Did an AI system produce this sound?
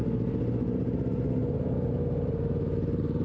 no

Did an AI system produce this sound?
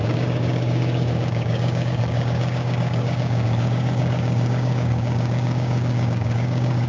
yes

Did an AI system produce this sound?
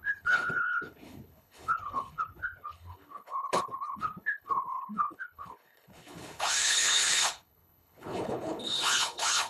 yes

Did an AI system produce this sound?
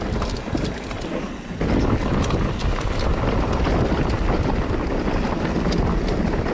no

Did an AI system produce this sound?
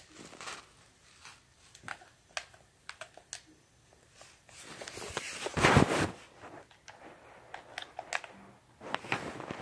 no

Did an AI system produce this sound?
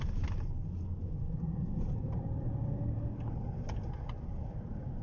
no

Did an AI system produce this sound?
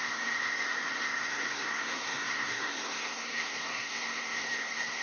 yes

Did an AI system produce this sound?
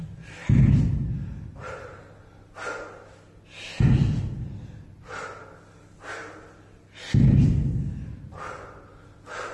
no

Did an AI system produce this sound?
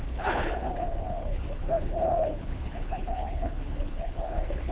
yes